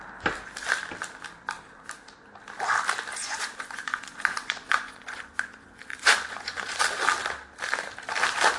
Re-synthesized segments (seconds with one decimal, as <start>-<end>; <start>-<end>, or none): 3.2-6.8